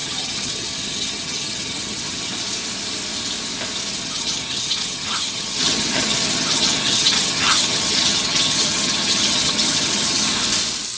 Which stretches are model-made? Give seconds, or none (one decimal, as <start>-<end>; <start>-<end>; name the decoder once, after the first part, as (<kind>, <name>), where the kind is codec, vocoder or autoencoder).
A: 0.0-2.3 (vocoder, HiFi-GAN); 3.9-10.3